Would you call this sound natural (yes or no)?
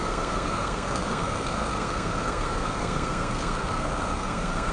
no